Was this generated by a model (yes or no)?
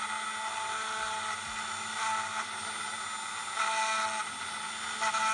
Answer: no